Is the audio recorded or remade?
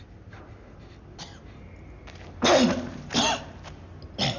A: recorded